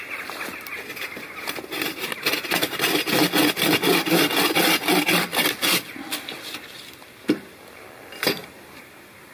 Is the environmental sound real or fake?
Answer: real